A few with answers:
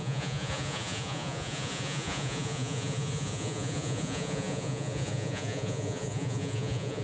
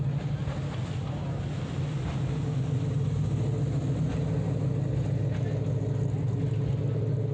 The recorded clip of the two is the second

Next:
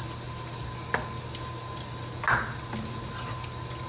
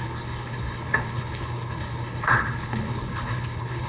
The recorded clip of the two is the first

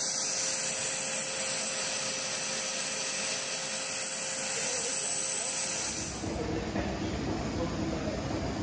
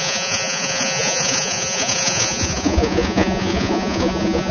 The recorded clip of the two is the first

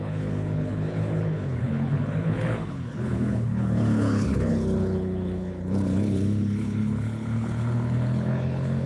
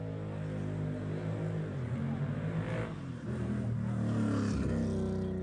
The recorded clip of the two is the second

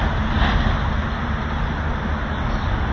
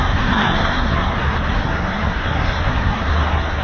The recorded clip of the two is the first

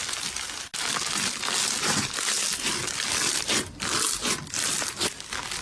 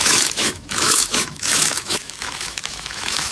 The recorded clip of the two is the first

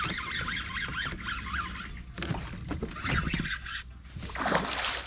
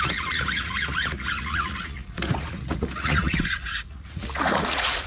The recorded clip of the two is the first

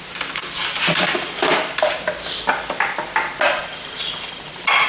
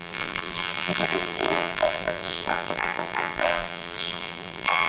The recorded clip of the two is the first